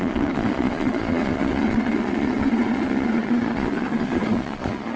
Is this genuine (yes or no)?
no